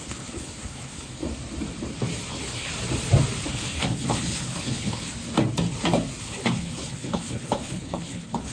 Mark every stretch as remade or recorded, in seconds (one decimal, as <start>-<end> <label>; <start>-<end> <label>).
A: 0.0-1.2 remade; 1.2-2.3 recorded; 2.3-2.7 remade; 2.7-3.5 recorded; 3.5-5.1 remade; 5.1-6.2 recorded; 6.2-8.5 remade